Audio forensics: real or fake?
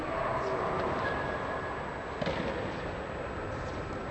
real